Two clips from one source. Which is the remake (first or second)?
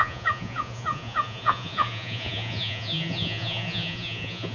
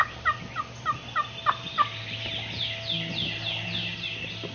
first